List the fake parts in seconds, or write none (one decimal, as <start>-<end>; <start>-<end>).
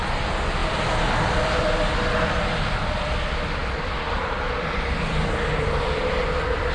none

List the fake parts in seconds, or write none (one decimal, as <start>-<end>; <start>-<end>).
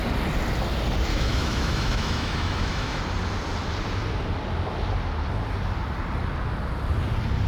1.1-3.0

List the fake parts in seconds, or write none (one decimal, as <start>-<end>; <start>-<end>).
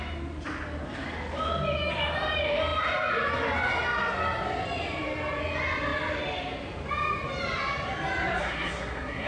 8.4-9.3